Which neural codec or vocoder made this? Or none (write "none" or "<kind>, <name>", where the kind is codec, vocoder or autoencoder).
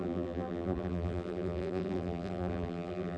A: vocoder, BigVGAN v2